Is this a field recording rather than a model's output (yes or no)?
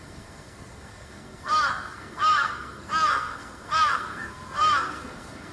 no